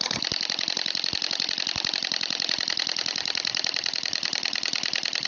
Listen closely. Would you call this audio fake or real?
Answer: fake